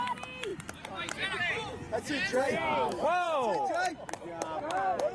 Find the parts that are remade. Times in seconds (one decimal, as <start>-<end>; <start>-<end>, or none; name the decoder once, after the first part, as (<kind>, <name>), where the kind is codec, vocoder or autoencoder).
0.5-1.1 (vocoder, BigVGAN v2); 2.3-4.1